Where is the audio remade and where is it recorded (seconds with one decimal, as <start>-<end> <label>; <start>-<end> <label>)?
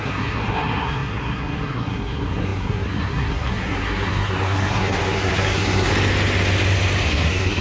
0.0-5.9 remade; 5.9-7.1 recorded; 7.1-7.6 remade